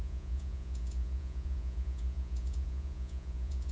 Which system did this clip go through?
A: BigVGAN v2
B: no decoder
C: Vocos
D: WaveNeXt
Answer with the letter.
C